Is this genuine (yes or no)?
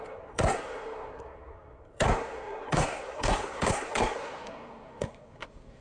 no